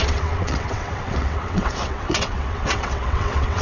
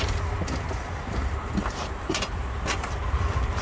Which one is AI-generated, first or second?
first